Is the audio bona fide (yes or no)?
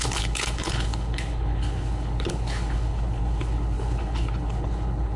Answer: no